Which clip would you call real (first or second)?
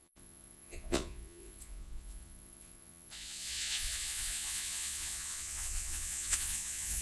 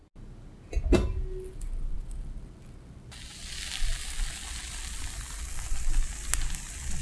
second